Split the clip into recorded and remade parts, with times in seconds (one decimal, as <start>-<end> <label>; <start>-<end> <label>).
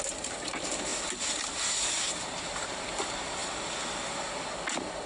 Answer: 0.0-0.9 recorded; 0.9-2.4 remade; 2.4-3.4 recorded; 3.4-4.3 remade; 4.3-5.1 recorded